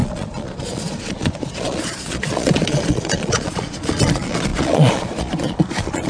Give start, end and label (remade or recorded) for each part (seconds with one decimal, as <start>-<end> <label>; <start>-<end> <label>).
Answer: 0.0-6.1 remade